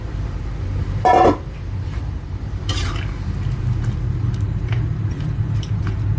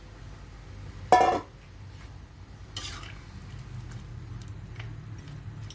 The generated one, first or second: first